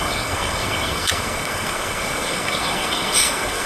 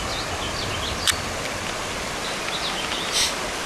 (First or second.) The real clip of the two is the second